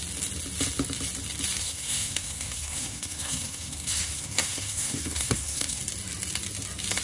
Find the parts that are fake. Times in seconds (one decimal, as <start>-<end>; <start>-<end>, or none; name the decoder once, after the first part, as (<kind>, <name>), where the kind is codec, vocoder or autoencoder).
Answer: 1.6-5.8 (codec, SNAC)